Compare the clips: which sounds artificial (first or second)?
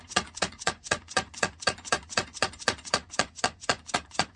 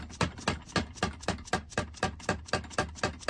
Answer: first